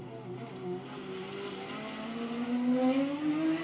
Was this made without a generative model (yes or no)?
yes